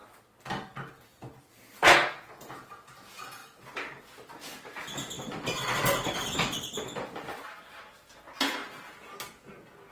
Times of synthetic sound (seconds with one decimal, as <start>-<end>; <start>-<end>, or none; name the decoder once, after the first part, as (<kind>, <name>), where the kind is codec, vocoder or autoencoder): 1.7-3.4 (vocoder, Vocos); 8.1-8.6; 9.3-9.9